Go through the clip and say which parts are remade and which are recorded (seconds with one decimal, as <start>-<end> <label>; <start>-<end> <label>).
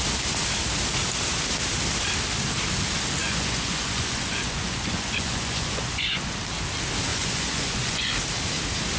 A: 0.0-3.2 recorded; 3.2-6.3 remade; 6.3-7.1 recorded; 7.1-8.1 remade; 8.1-9.0 recorded